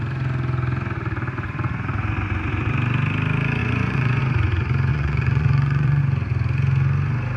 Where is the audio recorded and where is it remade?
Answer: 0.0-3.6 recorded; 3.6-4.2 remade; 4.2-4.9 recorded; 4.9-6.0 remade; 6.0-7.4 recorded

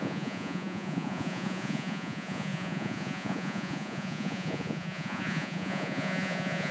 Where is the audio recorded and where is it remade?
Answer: 0.0-6.7 remade

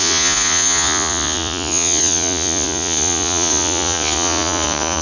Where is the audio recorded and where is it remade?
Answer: 0.0-5.0 remade

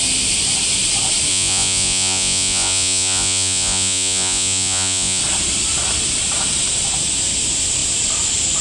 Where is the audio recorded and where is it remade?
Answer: 0.0-1.3 recorded; 1.3-5.2 remade; 5.2-8.6 recorded

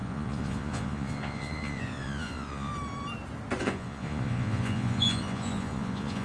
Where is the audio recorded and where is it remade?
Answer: 0.0-2.7 remade; 2.7-3.6 recorded; 3.6-6.2 remade